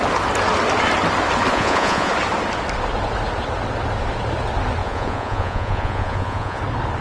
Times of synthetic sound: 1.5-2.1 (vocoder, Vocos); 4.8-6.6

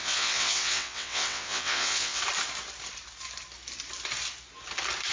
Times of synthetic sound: 0.0-2.2 (vocoder, WaveNeXt)

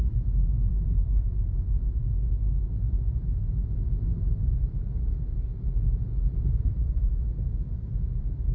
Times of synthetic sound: 0.0-2.0 (vocoder, BigVGAN v2); 6.5-8.5